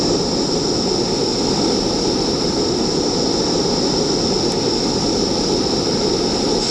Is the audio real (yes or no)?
yes